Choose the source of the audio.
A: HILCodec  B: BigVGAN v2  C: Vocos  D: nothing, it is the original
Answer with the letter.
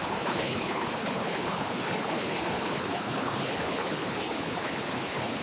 A